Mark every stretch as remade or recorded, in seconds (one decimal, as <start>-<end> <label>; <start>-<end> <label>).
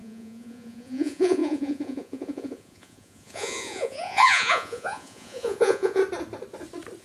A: 0.0-6.0 remade; 6.0-7.0 recorded